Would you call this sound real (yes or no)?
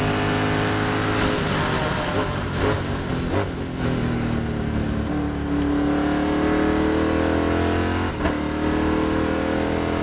yes